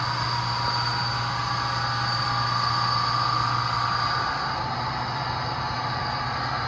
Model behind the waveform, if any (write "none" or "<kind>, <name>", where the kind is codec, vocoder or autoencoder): none